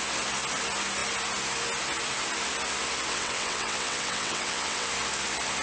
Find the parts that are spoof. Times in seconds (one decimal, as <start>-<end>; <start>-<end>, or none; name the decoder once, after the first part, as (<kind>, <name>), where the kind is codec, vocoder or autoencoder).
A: 3.1-4.9 (vocoder, WaveNeXt)